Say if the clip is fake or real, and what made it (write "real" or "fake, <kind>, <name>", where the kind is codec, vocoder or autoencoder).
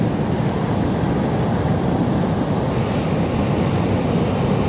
real